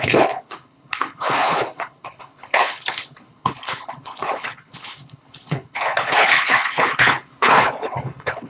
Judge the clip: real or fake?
fake